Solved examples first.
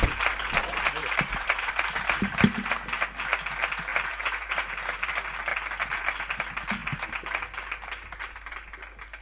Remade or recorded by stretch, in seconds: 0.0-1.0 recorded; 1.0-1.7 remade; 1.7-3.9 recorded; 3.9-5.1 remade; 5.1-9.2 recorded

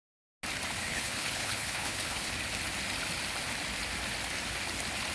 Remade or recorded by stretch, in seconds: 0.0-0.8 recorded; 0.8-2.3 remade; 2.3-5.1 recorded